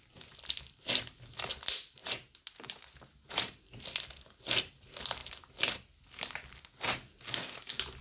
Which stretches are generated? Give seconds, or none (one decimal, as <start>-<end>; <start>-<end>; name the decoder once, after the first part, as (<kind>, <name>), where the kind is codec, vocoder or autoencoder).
none